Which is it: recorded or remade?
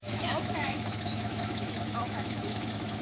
remade